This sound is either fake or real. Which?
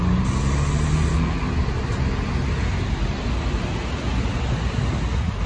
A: real